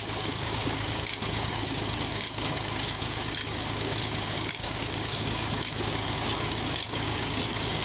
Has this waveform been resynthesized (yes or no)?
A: yes